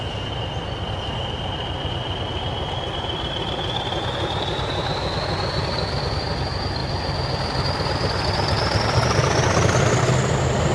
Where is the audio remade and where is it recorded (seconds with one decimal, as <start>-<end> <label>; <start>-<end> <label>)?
0.0-10.7 recorded